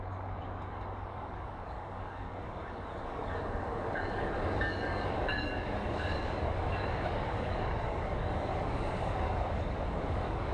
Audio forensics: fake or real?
fake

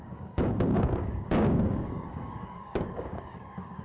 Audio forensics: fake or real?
fake